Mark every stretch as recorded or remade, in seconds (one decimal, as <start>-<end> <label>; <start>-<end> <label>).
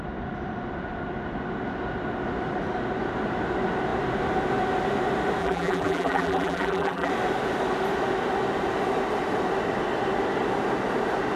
0.0-5.4 recorded; 5.4-7.1 remade; 7.1-11.4 recorded